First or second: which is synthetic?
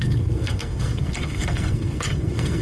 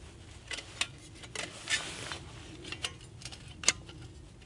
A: first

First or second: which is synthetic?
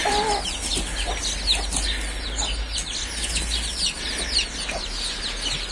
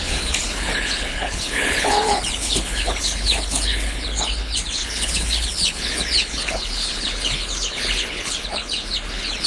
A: second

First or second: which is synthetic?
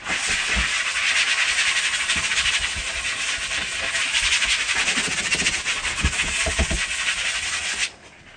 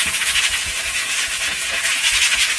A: second